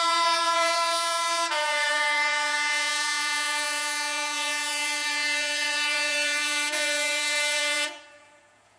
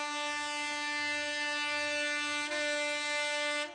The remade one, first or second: first